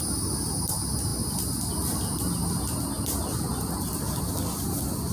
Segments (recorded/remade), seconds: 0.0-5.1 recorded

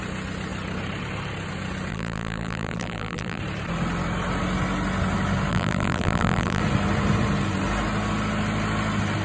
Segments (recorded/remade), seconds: 0.0-1.9 recorded; 1.9-3.4 remade; 3.4-5.5 recorded; 5.5-6.6 remade; 6.6-9.2 recorded

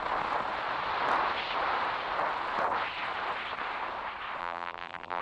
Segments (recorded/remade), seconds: 0.0-4.4 recorded; 4.4-5.2 remade

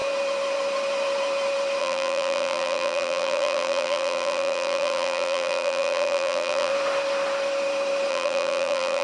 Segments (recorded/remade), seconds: 0.0-1.8 recorded; 1.8-6.7 remade; 6.7-8.1 recorded; 8.1-9.0 remade